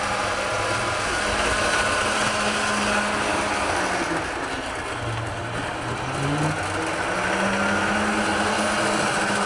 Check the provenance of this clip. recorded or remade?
recorded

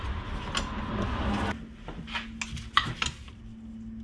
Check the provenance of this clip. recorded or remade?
recorded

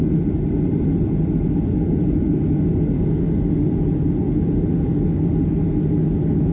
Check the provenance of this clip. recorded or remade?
recorded